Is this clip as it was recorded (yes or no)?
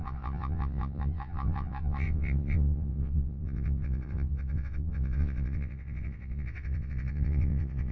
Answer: no